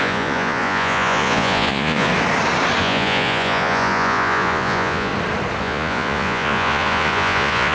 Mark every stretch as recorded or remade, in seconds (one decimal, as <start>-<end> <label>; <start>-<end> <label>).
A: 0.0-2.1 remade; 2.1-2.8 recorded; 2.8-5.1 remade; 5.1-5.6 recorded; 5.6-7.7 remade